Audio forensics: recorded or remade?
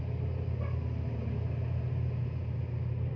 recorded